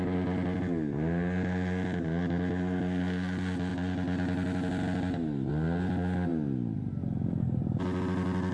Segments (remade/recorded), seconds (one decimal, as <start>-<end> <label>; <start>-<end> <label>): 0.0-8.5 recorded